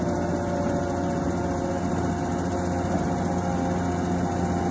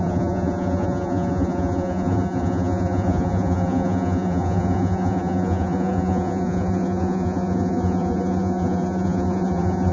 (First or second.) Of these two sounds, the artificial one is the second